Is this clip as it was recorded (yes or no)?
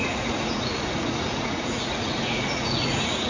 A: no